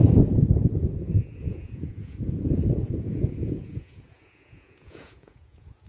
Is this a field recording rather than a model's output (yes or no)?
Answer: no